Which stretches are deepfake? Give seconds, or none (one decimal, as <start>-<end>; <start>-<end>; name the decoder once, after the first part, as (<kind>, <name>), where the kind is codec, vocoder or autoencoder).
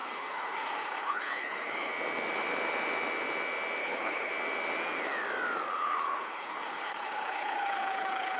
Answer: 0.0-1.9 (codec, HILCodec); 3.8-4.3; 5.7-8.4